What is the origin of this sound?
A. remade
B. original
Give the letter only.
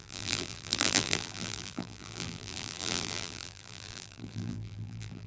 A